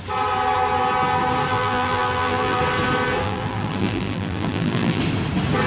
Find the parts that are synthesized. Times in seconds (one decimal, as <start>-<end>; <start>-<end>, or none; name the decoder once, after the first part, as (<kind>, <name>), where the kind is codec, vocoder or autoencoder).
1.5-2.6 (vocoder, BigVGAN v2); 3.2-5.0